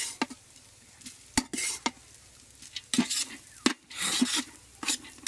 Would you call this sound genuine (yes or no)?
yes